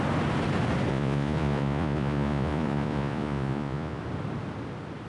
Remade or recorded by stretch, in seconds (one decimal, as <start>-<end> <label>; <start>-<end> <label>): 0.0-0.9 recorded; 0.9-4.0 remade; 4.0-5.1 recorded